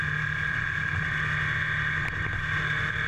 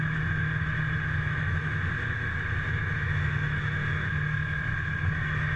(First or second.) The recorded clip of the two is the first